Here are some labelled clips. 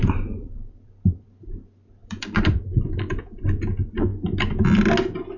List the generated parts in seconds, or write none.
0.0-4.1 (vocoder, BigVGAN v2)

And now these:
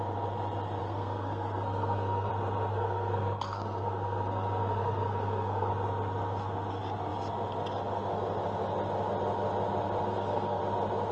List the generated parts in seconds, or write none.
0.8-2.3 (codec, SNAC); 2.7-5.7; 10.1-10.6

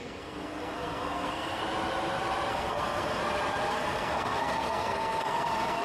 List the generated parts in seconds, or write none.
0.0-1.6 (codec, SNAC); 2.5-3.2; 3.7-5.8

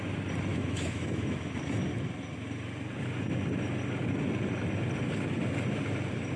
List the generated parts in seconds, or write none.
0.5-1.6 (autoencoder, DAC-VAE)